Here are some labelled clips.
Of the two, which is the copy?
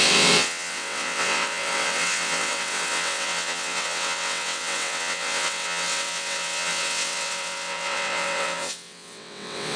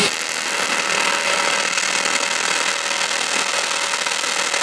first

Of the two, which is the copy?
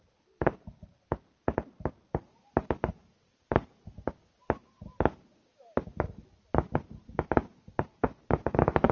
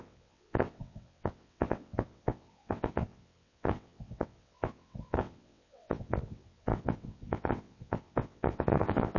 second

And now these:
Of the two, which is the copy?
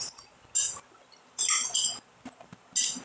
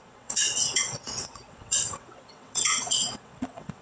second